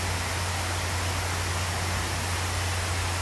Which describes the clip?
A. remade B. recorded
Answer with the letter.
B